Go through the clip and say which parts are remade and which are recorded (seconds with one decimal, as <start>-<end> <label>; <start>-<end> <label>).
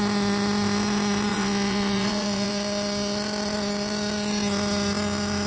0.0-1.3 recorded; 1.3-2.5 remade; 2.5-5.5 recorded